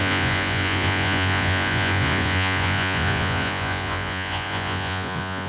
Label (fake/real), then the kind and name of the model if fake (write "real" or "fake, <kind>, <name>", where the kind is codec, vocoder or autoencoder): fake, vocoder, Vocos